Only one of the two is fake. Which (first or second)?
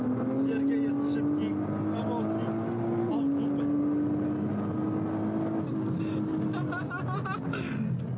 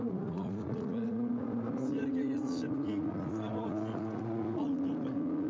second